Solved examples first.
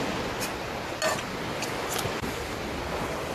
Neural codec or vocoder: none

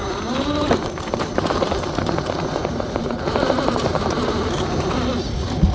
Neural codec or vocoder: vocoder, BigVGAN v2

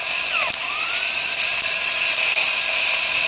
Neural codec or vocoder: none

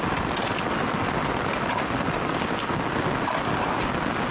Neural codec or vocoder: none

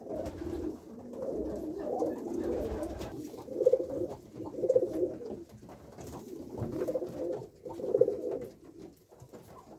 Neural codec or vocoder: none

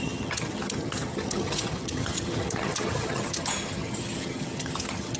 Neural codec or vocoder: vocoder, HiFi-GAN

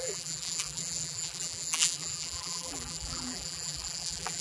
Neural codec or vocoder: vocoder, BigVGAN v2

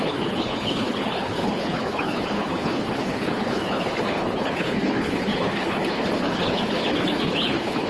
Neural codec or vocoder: codec, HILCodec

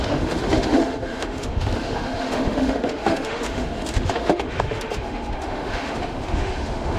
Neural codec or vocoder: autoencoder, DAC-VAE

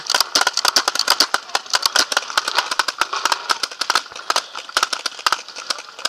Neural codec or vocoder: none